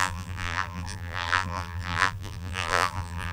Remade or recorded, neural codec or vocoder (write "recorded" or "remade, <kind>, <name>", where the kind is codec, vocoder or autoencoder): remade, vocoder, BigVGAN v2